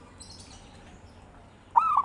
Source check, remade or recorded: recorded